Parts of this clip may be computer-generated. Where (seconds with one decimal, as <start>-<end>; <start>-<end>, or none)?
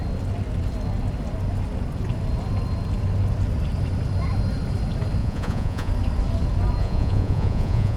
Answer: 5.2-5.9; 6.8-8.0